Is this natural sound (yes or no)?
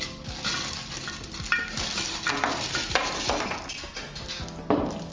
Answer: yes